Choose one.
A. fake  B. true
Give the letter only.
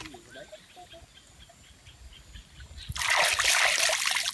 B